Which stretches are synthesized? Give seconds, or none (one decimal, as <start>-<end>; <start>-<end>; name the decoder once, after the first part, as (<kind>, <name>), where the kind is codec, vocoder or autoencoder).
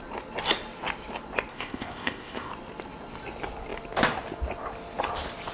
1.5-2.5 (codec, ZipCodec)